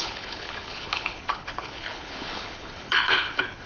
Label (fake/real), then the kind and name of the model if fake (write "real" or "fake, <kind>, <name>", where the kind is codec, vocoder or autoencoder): fake, codec, HILCodec